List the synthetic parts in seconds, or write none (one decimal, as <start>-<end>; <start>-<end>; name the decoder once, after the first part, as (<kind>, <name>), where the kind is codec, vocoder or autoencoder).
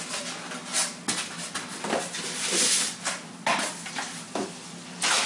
none